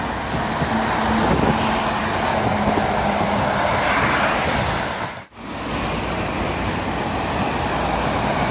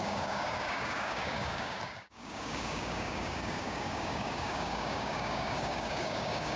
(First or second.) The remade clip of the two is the second